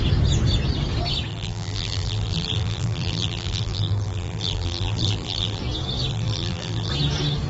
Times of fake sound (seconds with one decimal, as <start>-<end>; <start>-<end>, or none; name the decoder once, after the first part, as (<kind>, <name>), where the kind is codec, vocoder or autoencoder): 1.3-5.6 (vocoder, BigVGAN v2); 6.1-6.9